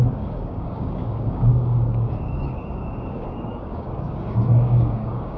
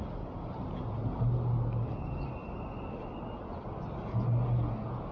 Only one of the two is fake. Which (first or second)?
first